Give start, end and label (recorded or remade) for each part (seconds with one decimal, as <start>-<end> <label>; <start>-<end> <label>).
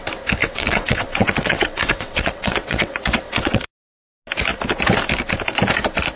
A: 0.0-0.4 recorded; 0.4-3.7 remade; 3.7-6.2 recorded